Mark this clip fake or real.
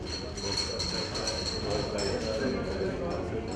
real